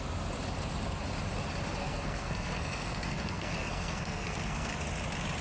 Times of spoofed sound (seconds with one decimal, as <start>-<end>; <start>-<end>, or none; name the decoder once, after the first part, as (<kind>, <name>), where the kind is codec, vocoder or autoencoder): 1.8-4.7 (codec, SNAC)

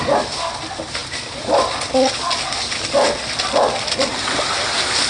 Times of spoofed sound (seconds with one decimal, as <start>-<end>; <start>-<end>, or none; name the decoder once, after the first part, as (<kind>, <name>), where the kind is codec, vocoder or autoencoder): none